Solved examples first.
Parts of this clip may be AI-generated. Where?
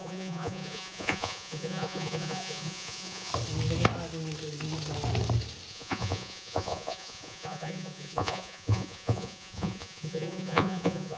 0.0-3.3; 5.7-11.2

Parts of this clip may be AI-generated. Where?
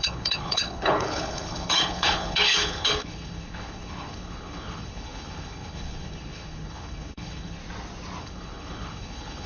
0.0-7.6; 8.2-9.5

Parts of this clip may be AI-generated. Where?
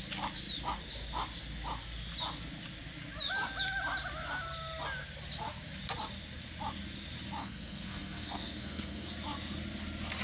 7.4-9.1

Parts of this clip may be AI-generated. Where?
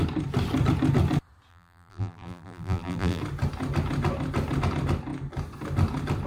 1.5-3.2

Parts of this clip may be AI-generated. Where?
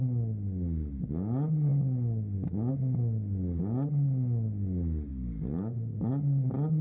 5.1-6.1